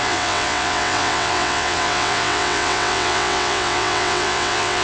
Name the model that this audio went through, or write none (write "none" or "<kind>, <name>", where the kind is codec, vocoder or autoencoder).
vocoder, WaveNeXt